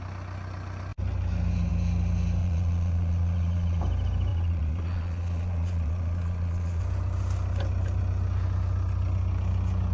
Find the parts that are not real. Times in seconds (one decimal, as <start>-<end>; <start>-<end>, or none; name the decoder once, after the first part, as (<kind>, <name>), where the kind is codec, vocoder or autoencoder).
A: 2.4-3.8 (vocoder, Vocos); 4.3-6.8